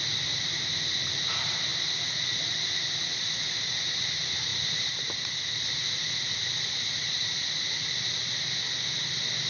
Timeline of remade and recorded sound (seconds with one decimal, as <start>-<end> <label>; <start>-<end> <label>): 0.0-9.5 recorded